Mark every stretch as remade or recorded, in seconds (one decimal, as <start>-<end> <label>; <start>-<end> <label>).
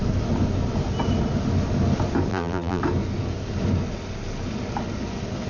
0.0-2.3 recorded; 2.3-2.8 remade; 2.8-5.5 recorded